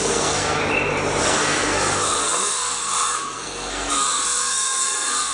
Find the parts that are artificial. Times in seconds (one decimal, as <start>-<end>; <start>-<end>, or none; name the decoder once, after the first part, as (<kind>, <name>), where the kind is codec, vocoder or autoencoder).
0.0-0.6 (codec, SNAC); 1.2-5.3